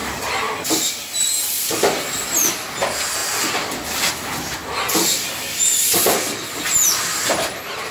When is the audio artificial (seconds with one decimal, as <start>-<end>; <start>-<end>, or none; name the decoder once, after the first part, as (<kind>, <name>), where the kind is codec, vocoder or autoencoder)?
none